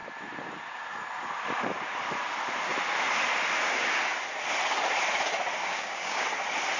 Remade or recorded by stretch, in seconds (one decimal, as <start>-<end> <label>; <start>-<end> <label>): 0.0-5.6 recorded; 5.6-6.2 remade; 6.2-6.8 recorded